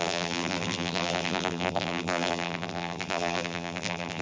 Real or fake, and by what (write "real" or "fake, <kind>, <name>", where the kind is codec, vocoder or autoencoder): fake, vocoder, BigVGAN v2